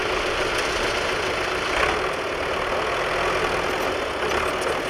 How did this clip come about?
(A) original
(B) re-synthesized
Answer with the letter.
A